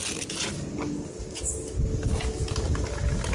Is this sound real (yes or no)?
yes